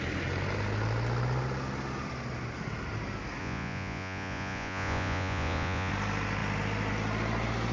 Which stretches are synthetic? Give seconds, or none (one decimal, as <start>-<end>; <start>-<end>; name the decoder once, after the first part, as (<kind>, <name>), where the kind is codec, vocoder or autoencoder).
3.4-5.9 (vocoder, Vocos)